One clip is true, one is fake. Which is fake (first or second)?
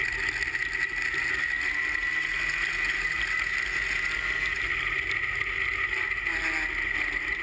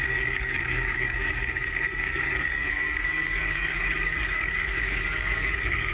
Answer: second